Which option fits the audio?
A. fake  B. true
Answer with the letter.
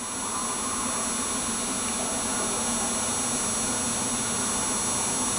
B